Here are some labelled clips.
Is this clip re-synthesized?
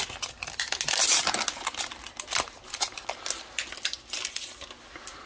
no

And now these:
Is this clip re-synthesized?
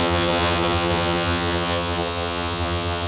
yes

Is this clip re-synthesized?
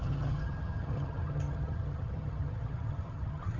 yes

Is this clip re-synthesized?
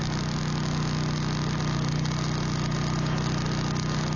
no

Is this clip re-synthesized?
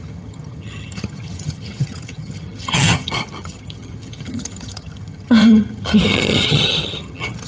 yes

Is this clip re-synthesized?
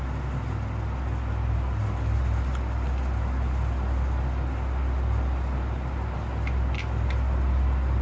no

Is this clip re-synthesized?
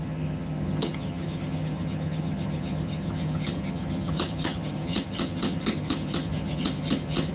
yes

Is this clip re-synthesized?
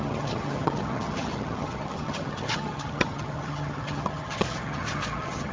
yes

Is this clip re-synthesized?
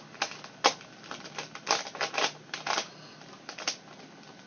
no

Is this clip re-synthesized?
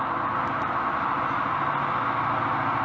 no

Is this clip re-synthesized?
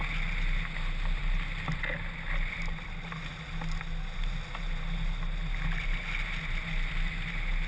no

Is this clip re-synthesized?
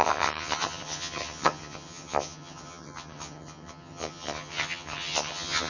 yes